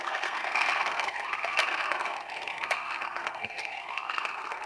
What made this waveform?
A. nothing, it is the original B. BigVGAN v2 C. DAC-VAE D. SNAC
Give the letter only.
D